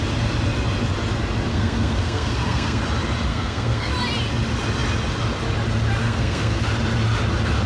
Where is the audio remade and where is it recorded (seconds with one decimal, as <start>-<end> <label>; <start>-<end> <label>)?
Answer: 0.0-1.5 recorded; 1.5-2.8 remade; 2.8-3.3 recorded; 3.3-3.9 remade; 3.9-6.0 recorded; 6.0-6.6 remade; 6.6-7.7 recorded